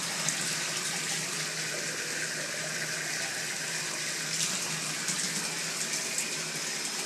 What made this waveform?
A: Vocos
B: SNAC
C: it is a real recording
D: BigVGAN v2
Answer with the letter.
C